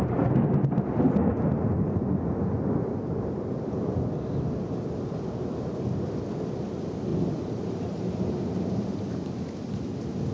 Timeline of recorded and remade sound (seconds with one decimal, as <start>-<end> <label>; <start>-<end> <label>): 0.0-7.1 recorded; 7.1-9.0 remade; 9.0-10.3 recorded